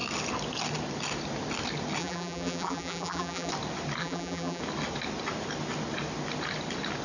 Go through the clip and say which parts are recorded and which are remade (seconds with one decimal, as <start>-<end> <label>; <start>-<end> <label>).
0.0-2.0 recorded; 2.0-3.5 remade; 3.5-4.0 recorded; 4.0-4.6 remade; 4.6-7.0 recorded